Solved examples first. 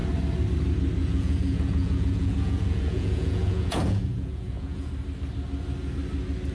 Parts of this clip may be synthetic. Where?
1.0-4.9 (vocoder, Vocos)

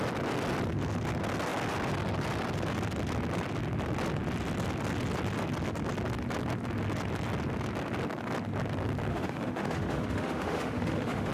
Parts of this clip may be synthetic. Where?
9.1-11.3 (autoencoder, DAC-VAE)

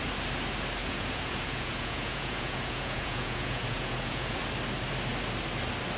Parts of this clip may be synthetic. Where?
0.8-4.4 (vocoder, Vocos)